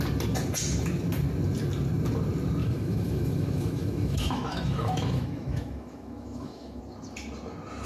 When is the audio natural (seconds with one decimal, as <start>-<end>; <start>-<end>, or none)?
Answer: 0.0-2.6; 6.8-7.9

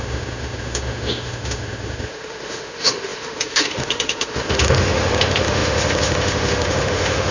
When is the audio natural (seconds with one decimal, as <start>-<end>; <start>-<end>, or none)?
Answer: none

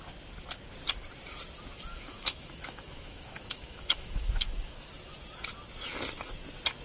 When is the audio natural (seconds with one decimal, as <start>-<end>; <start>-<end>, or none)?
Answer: 0.0-1.9; 4.9-6.8

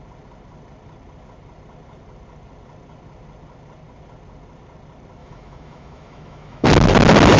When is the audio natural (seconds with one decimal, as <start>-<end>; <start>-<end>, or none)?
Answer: 0.0-5.2; 6.7-7.4

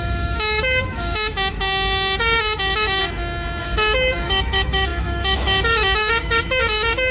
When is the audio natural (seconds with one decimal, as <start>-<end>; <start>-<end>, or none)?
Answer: 3.0-3.6